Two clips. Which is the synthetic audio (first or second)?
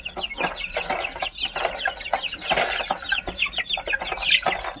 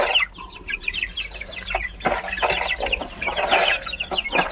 second